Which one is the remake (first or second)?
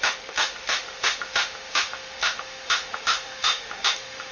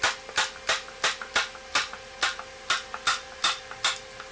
first